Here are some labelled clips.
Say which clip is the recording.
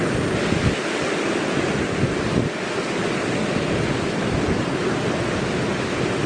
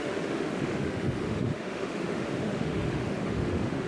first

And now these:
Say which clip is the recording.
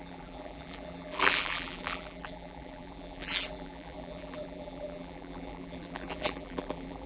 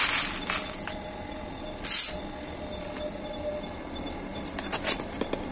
second